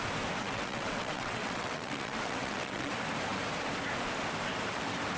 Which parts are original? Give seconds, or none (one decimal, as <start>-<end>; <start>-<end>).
0.0-0.4; 2.9-5.2

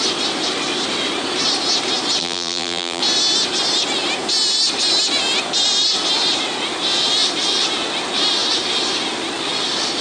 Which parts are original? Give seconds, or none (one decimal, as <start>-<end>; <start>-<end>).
0.0-2.2; 3.0-10.0

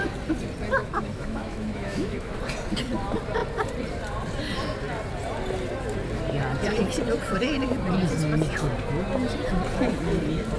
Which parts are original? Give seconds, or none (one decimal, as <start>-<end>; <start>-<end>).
0.0-0.8; 2.4-10.6

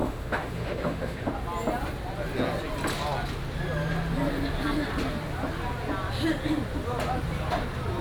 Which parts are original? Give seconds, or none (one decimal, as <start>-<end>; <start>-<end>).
1.3-8.0

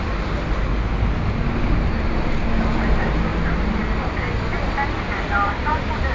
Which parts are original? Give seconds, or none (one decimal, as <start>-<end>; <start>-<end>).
0.0-6.1

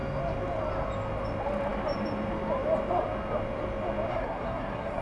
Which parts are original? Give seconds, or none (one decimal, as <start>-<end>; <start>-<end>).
0.0-4.1